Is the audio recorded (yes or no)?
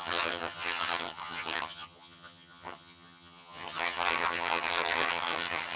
no